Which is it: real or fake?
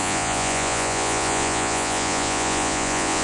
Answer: fake